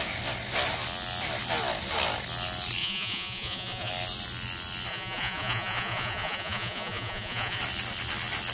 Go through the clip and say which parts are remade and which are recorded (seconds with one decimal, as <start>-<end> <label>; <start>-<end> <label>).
0.0-2.8 recorded; 2.8-3.9 remade; 3.9-4.9 recorded; 4.9-7.6 remade; 7.6-8.5 recorded